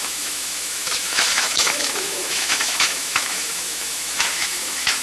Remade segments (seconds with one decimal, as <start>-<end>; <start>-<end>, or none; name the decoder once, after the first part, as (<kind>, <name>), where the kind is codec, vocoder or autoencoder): 0.0-5.0 (autoencoder, DAC-VAE)